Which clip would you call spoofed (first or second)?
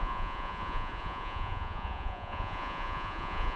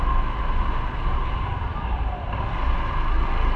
first